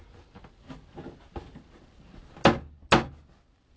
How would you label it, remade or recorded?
recorded